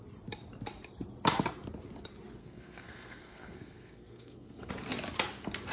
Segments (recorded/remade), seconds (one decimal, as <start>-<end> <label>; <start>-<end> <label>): 0.0-2.4 recorded; 2.4-4.7 remade; 4.7-5.7 recorded

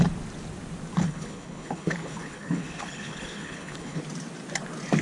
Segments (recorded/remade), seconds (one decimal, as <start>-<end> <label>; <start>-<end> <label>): 0.0-1.0 recorded; 1.0-4.0 remade; 4.0-5.0 recorded

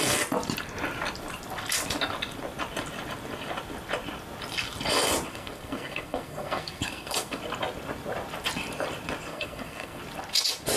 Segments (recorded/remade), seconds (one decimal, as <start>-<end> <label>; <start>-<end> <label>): 0.0-5.3 recorded; 5.3-7.4 remade; 7.4-9.3 recorded; 9.3-10.0 remade; 10.0-10.8 recorded

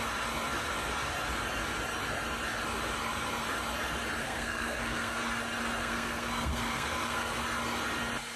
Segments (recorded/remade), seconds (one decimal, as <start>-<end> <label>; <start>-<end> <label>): 0.0-4.2 recorded; 4.2-5.2 remade; 5.2-5.8 recorded; 5.8-7.4 remade; 7.4-8.4 recorded

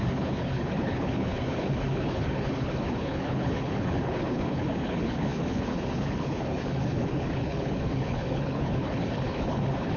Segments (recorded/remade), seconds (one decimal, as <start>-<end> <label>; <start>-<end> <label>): 0.0-10.0 remade

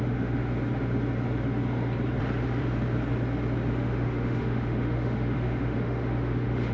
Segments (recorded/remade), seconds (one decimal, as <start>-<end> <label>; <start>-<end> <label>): 0.0-0.5 remade; 0.5-3.7 recorded; 3.7-6.7 remade